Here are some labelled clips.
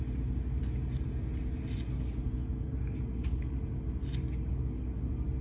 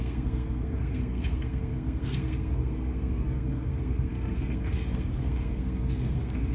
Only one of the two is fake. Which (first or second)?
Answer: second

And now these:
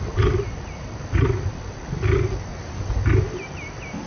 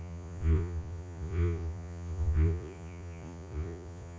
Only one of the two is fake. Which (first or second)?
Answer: second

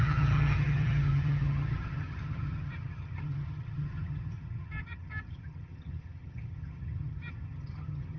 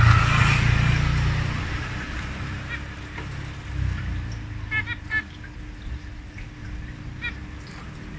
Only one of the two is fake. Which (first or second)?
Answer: first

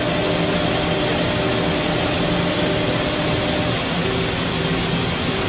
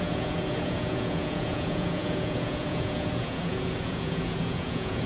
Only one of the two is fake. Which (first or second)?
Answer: second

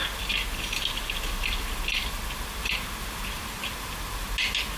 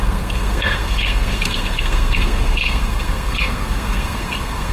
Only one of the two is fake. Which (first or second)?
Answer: second